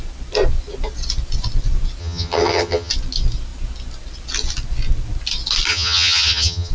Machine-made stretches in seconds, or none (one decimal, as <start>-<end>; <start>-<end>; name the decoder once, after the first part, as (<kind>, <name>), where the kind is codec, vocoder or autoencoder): 2.0-2.9 (vocoder, HiFi-GAN); 5.7-6.7